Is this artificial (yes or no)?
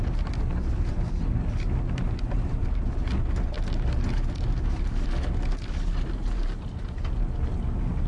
no